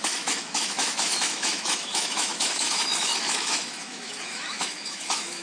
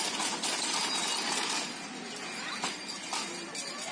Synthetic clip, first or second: first